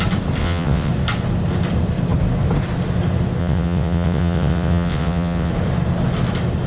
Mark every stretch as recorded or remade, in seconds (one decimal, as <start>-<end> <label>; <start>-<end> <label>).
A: 0.0-0.4 recorded; 0.4-0.9 remade; 0.9-3.4 recorded; 3.4-5.5 remade; 5.5-6.7 recorded